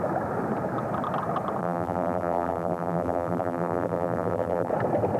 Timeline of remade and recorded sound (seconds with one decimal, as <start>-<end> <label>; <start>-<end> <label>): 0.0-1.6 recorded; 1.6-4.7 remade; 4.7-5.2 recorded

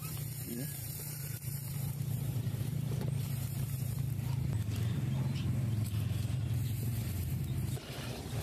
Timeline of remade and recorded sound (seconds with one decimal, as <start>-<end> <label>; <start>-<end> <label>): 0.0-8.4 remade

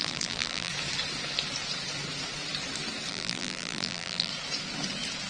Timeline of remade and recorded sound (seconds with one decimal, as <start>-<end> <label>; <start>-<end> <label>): 0.0-0.7 remade; 0.7-3.1 recorded; 3.1-4.3 remade; 4.3-5.3 recorded